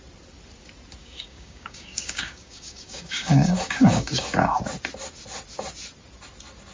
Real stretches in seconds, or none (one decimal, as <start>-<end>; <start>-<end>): 0.0-1.0; 4.6-6.7